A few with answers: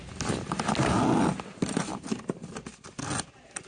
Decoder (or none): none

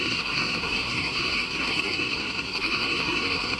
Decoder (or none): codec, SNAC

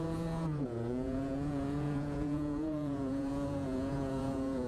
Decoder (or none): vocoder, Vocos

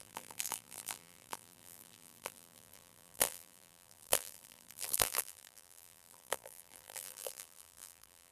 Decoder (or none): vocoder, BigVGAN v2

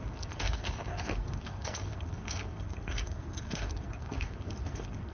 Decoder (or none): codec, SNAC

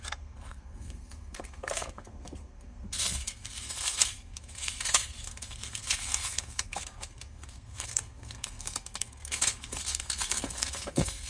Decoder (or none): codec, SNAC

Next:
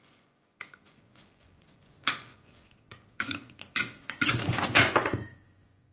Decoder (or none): vocoder, Vocos